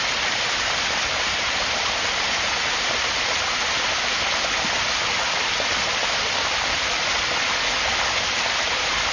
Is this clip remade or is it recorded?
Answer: recorded